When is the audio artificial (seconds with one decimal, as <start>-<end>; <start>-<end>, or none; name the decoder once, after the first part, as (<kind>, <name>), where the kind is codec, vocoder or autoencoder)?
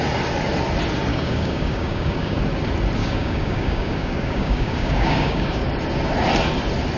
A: 1.1-2.4 (codec, DAC); 3.0-5.7